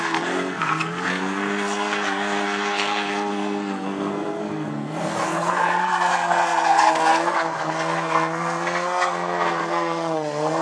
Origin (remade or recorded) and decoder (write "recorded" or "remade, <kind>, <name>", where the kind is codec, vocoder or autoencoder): remade, codec, SNAC